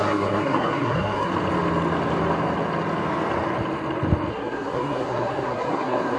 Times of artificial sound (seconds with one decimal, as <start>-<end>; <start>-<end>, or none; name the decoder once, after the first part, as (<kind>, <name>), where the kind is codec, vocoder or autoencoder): 0.0-1.3 (codec, SNAC); 4.3-6.2